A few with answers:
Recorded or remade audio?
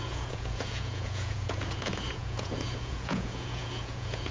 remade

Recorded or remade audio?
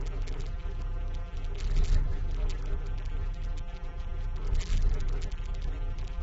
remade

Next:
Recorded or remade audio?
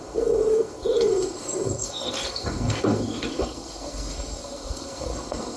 remade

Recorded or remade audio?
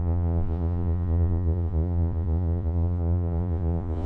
remade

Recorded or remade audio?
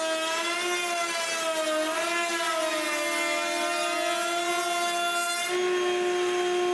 recorded